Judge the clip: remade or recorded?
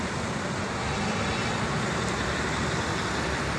recorded